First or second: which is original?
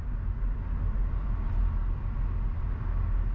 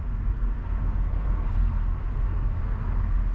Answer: first